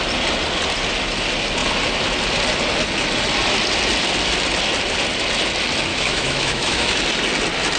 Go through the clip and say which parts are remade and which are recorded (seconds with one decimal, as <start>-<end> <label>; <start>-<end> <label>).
0.0-5.9 recorded; 5.9-7.0 remade; 7.0-7.8 recorded